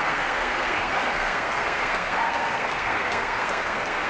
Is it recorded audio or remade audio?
remade